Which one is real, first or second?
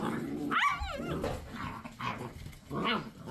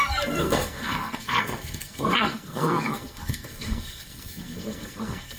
first